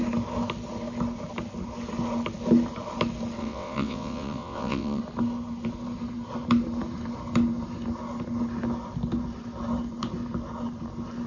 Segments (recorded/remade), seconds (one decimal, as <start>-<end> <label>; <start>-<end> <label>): 0.0-3.4 recorded; 3.4-5.0 remade; 5.0-11.3 recorded